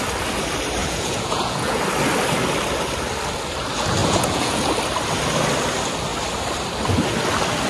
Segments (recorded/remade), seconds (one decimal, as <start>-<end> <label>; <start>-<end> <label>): 0.0-0.8 recorded; 0.8-1.8 remade; 1.8-4.0 recorded; 4.0-4.7 remade; 4.7-7.7 recorded